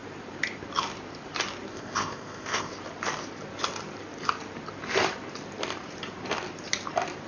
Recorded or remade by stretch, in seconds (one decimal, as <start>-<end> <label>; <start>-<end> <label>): 0.0-1.7 recorded; 1.7-2.7 remade; 2.7-7.3 recorded